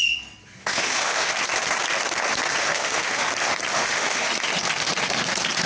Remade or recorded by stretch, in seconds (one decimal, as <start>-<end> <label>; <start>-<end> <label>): 0.0-0.6 recorded; 0.6-1.3 remade; 1.3-2.6 recorded; 2.6-3.3 remade; 3.3-3.7 recorded; 3.7-4.3 remade; 4.3-5.7 recorded